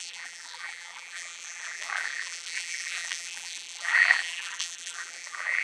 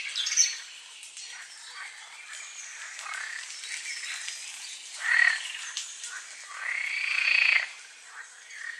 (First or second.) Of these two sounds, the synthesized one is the first